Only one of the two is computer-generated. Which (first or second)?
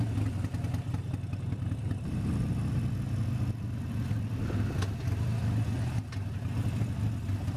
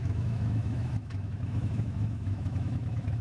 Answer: second